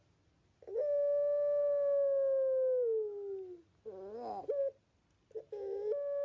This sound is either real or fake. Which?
real